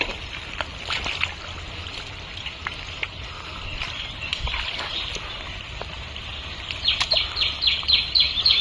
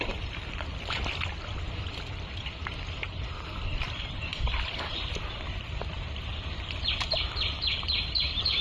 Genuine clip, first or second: first